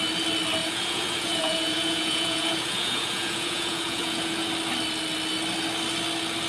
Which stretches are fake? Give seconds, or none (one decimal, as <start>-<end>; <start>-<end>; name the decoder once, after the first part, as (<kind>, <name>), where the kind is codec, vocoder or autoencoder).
0.6-4.5 (vocoder, Vocos)